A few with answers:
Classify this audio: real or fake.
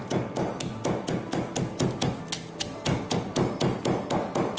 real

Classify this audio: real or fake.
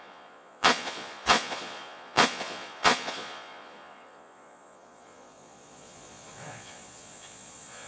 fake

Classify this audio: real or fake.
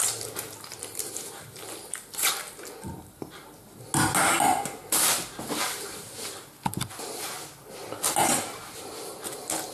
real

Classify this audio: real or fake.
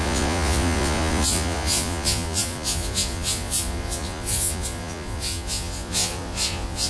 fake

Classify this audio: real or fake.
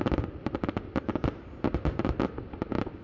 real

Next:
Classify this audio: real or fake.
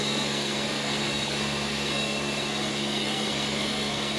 fake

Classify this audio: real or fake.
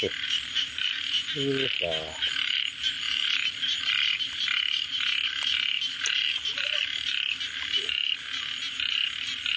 real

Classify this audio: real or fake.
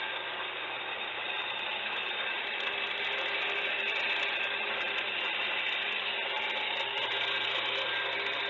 real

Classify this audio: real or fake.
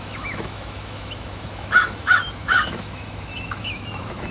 fake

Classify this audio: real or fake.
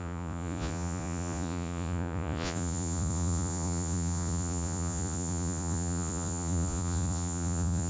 fake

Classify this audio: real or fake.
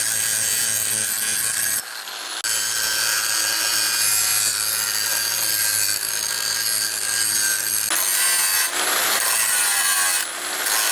real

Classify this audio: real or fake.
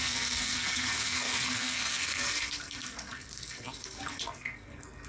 fake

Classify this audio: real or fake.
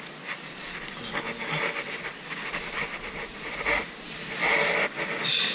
real